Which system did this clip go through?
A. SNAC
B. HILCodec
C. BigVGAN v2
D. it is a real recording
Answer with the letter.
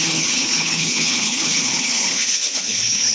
B